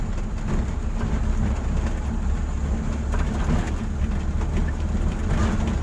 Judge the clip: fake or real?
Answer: real